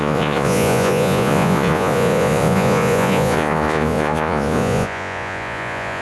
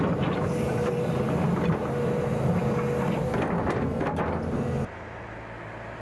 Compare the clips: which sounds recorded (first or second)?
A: second